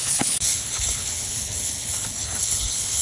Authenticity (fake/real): fake